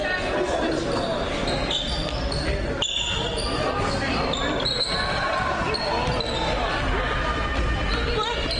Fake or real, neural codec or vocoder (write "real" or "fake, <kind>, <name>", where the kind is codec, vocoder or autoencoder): real